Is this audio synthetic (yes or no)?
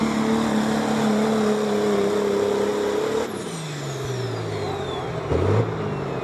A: no